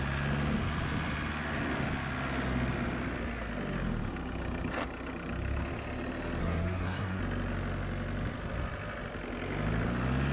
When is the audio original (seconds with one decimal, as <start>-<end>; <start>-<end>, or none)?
0.0-6.4; 7.2-10.3